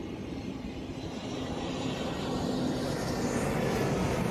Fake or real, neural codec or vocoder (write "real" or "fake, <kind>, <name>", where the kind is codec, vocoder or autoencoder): real